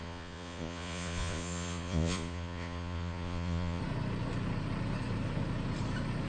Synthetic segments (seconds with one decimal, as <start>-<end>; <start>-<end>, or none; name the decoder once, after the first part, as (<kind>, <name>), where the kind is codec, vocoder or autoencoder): 0.0-3.8 (vocoder, Vocos)